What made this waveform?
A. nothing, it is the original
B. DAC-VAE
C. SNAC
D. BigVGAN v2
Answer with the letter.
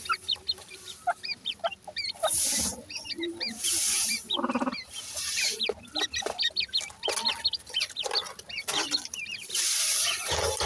A